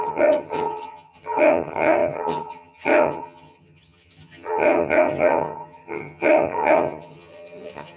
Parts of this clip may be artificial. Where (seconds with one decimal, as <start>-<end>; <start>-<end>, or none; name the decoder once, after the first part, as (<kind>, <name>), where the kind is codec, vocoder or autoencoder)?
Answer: 0.0-8.0 (vocoder, HiFi-GAN)